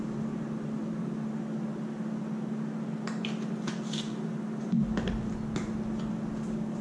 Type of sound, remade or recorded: recorded